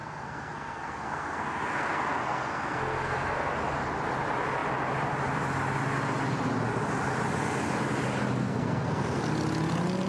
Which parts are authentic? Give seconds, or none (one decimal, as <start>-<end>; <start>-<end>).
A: 3.5-8.4; 9.2-10.1